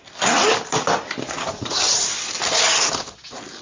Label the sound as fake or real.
real